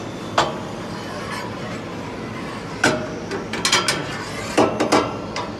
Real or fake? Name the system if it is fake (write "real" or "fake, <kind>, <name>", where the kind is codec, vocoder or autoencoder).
real